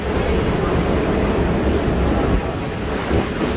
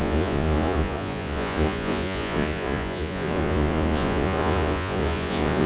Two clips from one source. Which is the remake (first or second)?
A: second